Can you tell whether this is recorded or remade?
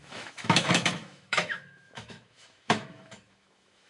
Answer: remade